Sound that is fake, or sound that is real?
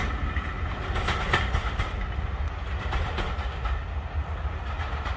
real